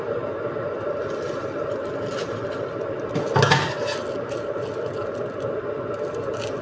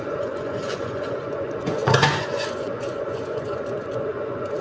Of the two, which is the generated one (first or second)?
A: second